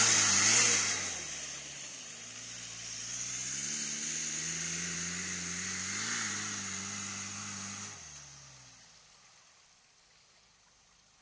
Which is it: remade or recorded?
recorded